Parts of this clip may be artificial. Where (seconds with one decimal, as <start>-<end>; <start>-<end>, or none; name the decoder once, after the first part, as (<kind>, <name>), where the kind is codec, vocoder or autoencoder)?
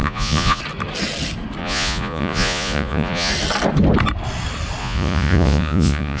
0.0-0.6 (vocoder, Vocos); 1.6-3.3; 4.8-6.2